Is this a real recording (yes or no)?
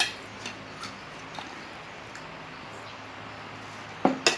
yes